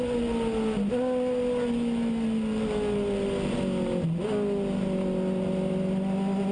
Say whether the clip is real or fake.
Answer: real